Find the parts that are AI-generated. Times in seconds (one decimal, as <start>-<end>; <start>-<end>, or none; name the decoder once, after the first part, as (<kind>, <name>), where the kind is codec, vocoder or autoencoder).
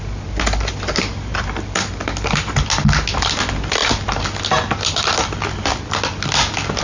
none